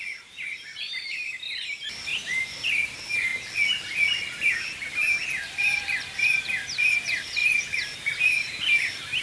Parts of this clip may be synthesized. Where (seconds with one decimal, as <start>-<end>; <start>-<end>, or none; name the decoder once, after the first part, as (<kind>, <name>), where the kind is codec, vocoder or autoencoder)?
0.0-3.3 (vocoder, BigVGAN v2); 4.5-9.2